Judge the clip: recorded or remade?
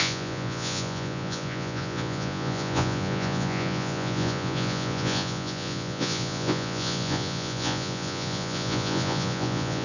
remade